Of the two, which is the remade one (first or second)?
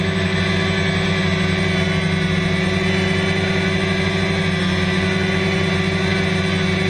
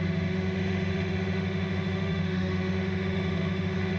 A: second